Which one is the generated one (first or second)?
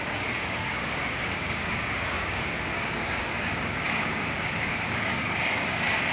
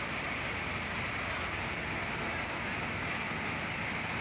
first